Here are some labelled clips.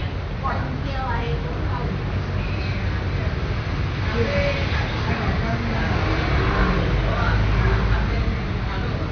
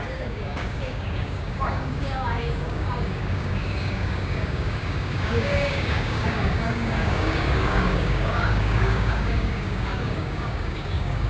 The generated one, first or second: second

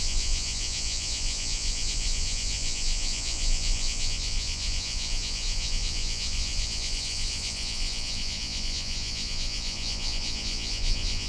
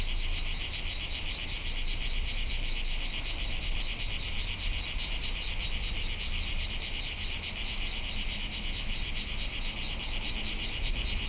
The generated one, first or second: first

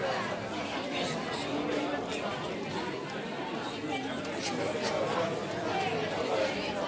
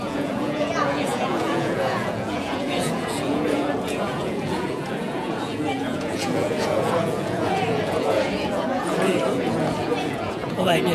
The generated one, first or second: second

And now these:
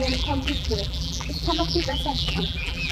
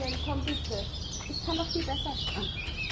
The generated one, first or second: first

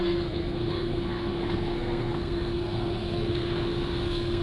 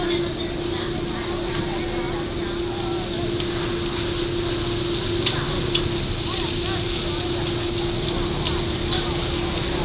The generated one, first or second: first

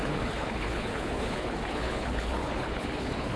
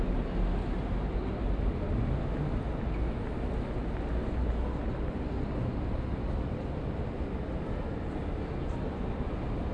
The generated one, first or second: first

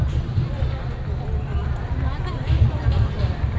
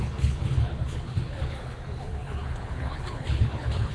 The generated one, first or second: second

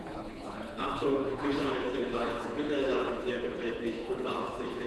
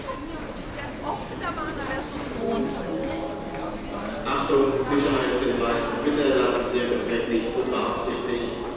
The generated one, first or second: first